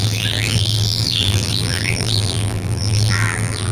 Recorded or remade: remade